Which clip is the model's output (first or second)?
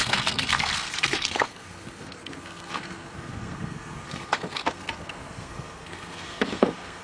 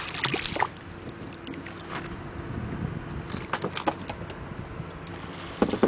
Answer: first